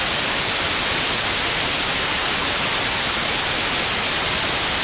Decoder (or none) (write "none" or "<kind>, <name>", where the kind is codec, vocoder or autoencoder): none